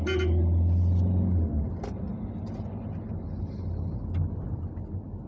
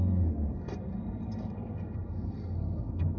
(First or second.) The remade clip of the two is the second